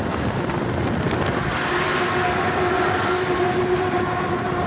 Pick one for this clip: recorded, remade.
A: recorded